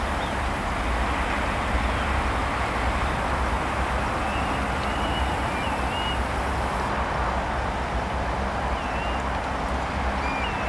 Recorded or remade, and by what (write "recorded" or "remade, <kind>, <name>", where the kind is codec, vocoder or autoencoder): recorded